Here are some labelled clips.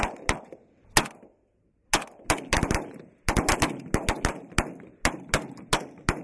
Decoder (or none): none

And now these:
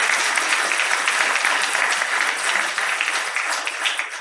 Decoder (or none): none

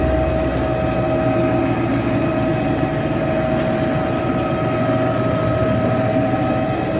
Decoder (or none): none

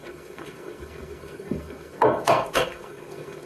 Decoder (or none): codec, SNAC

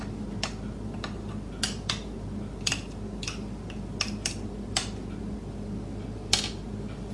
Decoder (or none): none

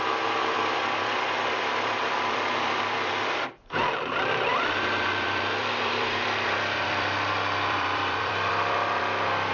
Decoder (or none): vocoder, BigVGAN v2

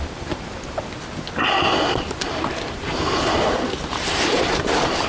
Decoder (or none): vocoder, BigVGAN v2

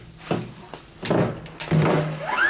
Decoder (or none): none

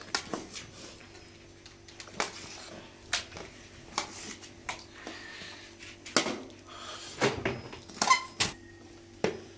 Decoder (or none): none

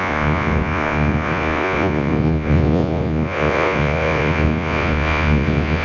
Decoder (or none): vocoder, Vocos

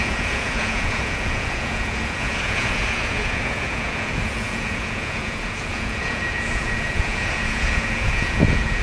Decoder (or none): vocoder, Vocos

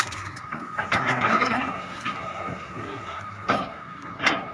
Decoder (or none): codec, SNAC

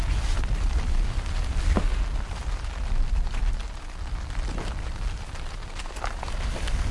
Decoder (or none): none